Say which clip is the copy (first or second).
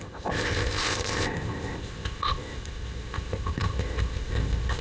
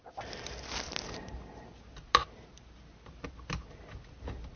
first